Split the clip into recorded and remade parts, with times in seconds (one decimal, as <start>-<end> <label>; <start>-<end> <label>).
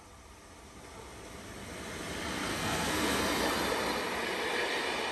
0.0-2.5 recorded; 2.5-3.2 remade; 3.2-5.1 recorded